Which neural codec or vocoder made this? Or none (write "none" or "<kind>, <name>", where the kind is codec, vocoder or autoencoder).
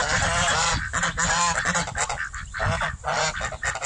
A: none